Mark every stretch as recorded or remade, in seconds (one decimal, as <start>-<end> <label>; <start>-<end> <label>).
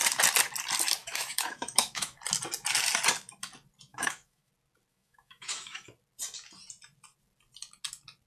0.0-1.0 recorded; 1.0-2.2 remade; 2.2-3.9 recorded; 3.9-4.5 remade; 4.5-4.9 recorded; 4.9-5.9 remade; 5.9-8.3 recorded